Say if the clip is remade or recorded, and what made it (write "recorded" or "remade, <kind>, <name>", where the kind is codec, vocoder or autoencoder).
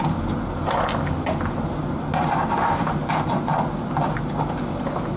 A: recorded